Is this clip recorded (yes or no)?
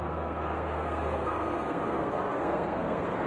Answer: no